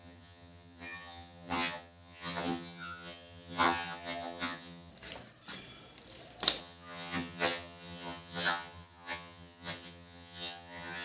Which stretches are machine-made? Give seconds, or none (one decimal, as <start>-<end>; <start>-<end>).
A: 0.0-4.9; 6.6-11.0